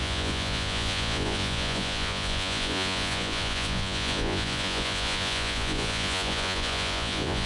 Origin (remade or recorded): remade